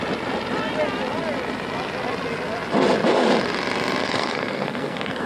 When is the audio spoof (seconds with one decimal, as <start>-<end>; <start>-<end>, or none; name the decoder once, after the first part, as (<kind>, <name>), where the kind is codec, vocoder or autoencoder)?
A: 4.0-5.3 (codec, SNAC)